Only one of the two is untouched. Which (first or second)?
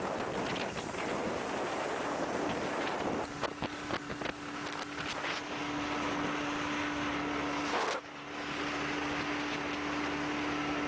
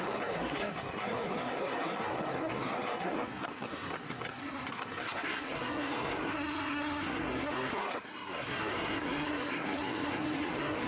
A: first